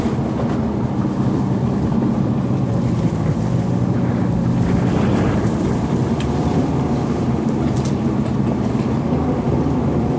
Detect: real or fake real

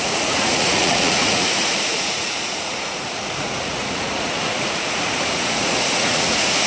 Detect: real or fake fake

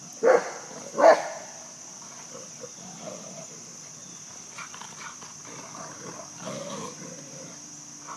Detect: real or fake real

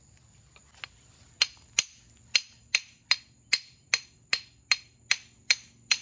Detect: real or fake real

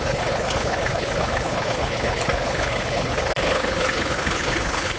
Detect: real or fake fake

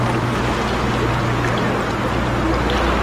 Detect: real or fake real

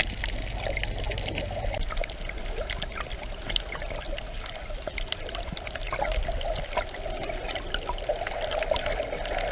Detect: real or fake real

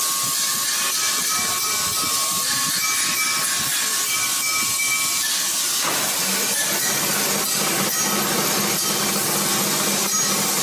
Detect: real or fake real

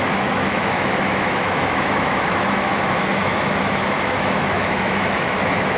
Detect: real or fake fake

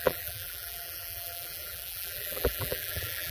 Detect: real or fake fake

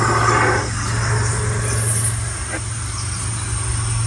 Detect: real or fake real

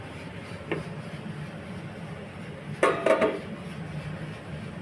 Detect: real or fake real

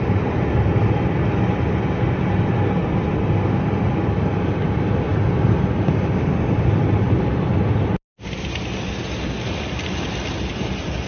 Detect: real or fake real